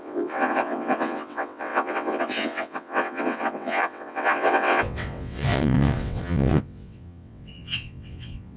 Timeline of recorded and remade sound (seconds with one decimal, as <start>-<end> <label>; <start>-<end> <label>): 0.0-8.6 remade

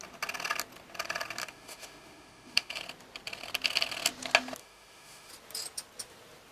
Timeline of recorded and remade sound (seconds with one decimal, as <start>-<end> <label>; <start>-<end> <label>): 0.0-1.4 recorded; 1.4-2.8 remade; 2.8-4.6 recorded; 4.6-5.3 remade; 5.3-6.5 recorded